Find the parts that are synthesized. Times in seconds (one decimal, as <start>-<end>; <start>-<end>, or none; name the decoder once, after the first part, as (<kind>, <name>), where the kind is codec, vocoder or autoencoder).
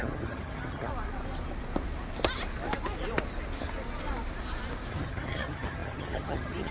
0.0-0.9 (vocoder, HiFi-GAN); 4.9-6.7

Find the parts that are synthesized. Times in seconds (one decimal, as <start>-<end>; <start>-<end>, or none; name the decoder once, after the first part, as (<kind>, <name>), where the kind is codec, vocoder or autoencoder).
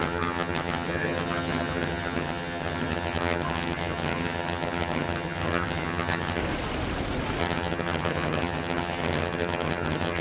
0.0-6.4 (vocoder, HiFi-GAN); 7.4-10.2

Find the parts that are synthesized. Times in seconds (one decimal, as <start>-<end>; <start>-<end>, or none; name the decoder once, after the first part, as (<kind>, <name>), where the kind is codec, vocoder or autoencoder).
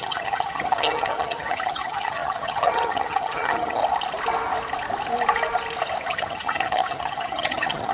0.0-3.8 (vocoder, HiFi-GAN); 6.1-7.9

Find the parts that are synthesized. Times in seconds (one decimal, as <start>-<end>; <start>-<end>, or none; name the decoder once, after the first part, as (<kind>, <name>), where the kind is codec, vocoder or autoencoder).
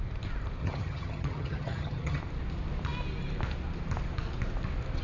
0.6-2.2 (vocoder, HiFi-GAN)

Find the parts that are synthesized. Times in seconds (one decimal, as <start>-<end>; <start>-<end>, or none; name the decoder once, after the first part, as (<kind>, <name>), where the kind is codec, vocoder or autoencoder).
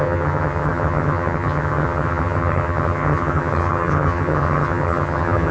0.0-5.5 (vocoder, HiFi-GAN)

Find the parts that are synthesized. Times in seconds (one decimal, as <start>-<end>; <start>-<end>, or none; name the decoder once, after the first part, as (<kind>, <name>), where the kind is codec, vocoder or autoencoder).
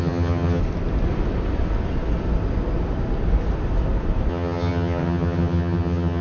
0.0-0.6 (vocoder, HiFi-GAN); 4.3-6.2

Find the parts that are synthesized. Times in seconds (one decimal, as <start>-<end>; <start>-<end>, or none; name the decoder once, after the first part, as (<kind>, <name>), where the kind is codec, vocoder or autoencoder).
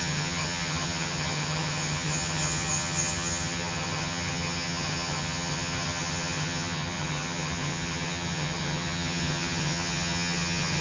0.0-10.8 (vocoder, HiFi-GAN)